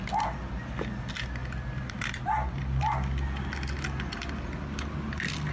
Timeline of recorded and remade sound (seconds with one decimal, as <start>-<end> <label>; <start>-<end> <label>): 0.0-1.4 recorded; 1.4-3.4 remade; 3.4-5.5 recorded